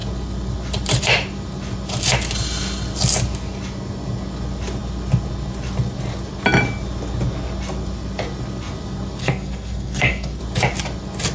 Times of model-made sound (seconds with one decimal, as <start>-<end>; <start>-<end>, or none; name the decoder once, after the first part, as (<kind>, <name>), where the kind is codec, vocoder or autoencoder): 9.2-10.4 (codec, SNAC)